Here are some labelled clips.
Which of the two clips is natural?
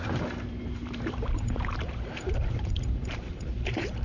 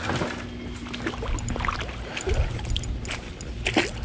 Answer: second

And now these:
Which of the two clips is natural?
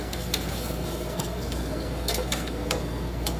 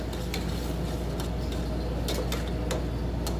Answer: second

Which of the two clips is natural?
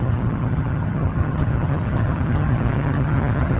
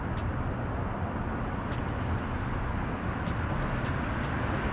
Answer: second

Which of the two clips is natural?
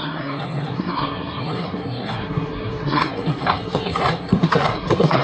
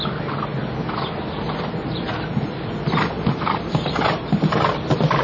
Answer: second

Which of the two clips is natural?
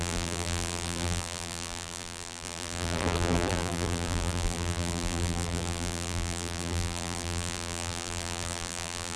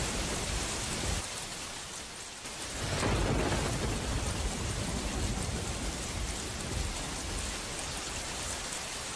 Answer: second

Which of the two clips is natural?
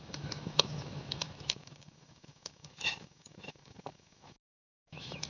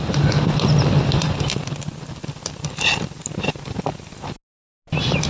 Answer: second